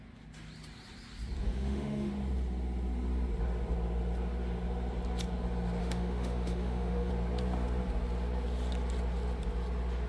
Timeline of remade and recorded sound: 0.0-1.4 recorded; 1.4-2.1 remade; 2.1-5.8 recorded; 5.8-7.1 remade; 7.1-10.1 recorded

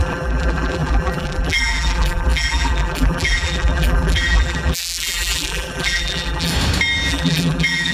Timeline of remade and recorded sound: 0.0-6.5 remade; 6.5-7.1 recorded; 7.1-7.9 remade

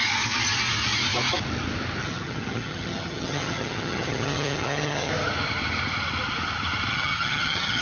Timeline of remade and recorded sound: 0.0-2.0 recorded; 2.0-5.1 remade; 5.1-6.9 recorded; 6.9-7.8 remade

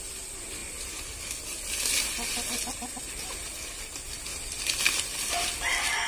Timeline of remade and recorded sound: 0.0-6.1 recorded